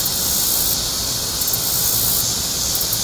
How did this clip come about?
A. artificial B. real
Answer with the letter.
B